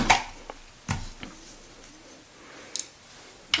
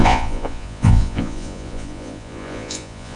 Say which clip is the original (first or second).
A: first